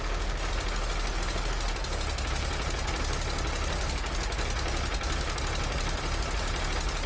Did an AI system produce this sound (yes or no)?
no